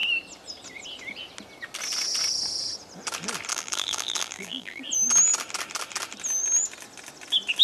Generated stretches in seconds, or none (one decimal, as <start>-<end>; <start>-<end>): 3.5-4.8